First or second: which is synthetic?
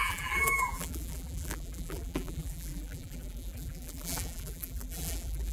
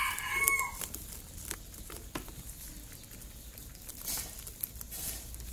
first